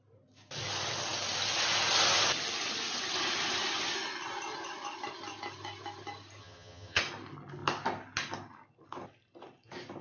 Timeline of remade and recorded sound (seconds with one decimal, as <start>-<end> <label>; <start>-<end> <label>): 0.0-6.4 recorded; 6.4-7.0 remade; 7.0-10.0 recorded